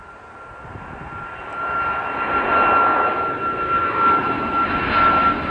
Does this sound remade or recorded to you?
recorded